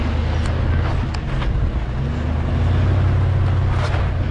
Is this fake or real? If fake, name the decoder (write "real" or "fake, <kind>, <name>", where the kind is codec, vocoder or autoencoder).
real